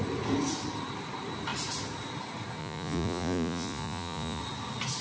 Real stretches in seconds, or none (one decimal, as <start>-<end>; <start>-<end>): 0.0-2.6; 4.4-5.0